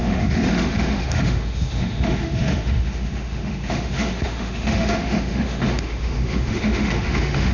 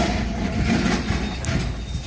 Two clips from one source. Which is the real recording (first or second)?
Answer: second